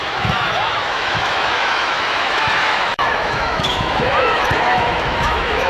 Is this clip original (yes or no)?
no